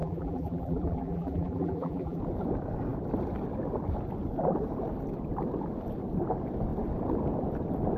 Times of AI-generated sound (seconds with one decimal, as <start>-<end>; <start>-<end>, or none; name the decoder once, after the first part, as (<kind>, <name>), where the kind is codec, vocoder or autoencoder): 0.0-2.2 (vocoder, BigVGAN v2)